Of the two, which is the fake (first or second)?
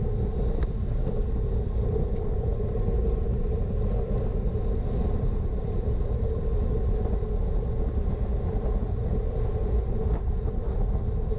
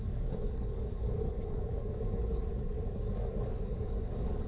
second